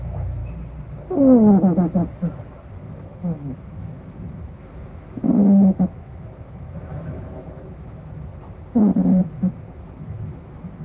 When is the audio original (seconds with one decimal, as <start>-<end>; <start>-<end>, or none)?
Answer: 0.4-3.0; 8.3-9.2